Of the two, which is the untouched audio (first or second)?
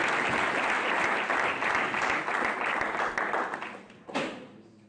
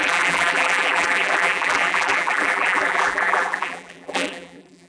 first